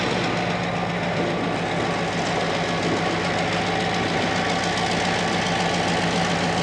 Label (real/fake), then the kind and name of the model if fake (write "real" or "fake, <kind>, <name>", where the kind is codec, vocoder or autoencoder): real